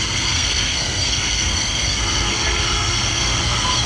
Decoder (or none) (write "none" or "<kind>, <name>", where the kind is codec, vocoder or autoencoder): codec, SNAC